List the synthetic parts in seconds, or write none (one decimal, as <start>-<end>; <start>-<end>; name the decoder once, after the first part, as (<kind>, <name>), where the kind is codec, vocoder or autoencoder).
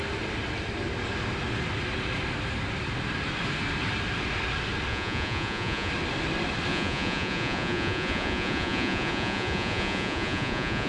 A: 4.9-5.9 (vocoder, Vocos); 6.7-10.9